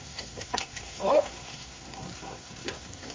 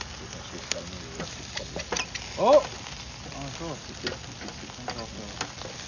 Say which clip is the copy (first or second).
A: first